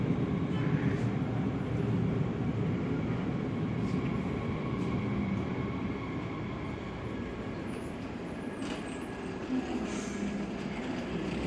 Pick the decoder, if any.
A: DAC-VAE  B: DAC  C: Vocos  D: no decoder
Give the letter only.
D